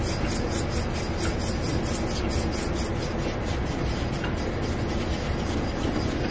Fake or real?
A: real